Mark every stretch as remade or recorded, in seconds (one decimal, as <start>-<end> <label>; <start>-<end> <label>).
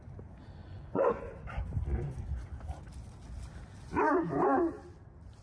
0.0-0.6 recorded; 0.6-1.2 remade; 1.2-5.4 recorded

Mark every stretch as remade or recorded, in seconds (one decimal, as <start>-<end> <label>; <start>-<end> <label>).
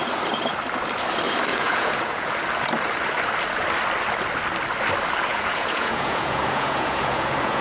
0.0-1.5 recorded; 1.5-2.3 remade; 2.3-5.3 recorded; 5.3-7.6 remade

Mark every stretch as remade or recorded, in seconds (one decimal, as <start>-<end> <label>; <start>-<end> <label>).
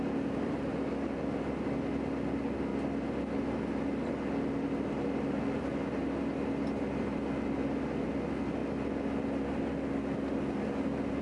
0.0-11.2 recorded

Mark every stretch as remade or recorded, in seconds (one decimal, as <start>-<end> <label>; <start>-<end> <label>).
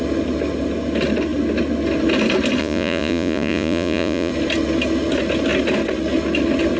0.0-2.6 recorded; 2.6-4.3 remade; 4.3-6.8 recorded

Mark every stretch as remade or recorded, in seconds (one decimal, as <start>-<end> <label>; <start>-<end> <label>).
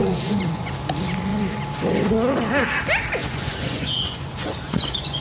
0.0-0.7 remade; 0.7-3.2 recorded; 3.2-5.2 remade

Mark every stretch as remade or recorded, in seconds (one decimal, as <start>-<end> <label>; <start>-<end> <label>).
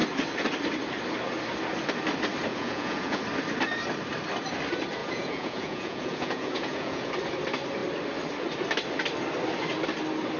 0.0-2.5 recorded; 2.5-3.2 remade; 3.2-5.0 recorded; 5.0-7.1 remade; 7.1-10.4 recorded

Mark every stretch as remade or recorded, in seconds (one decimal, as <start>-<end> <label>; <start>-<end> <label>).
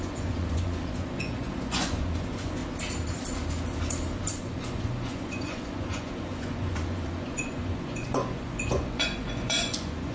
0.0-2.6 remade; 2.6-4.4 recorded; 4.4-10.1 remade